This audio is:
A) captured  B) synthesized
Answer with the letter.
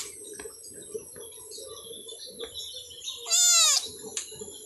A